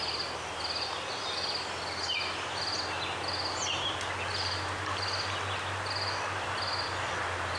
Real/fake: real